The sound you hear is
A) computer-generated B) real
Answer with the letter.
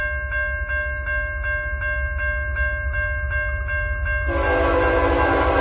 B